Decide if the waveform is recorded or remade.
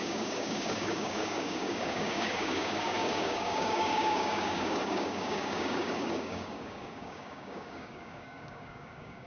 remade